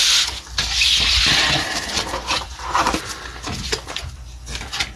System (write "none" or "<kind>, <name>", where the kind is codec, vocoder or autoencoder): none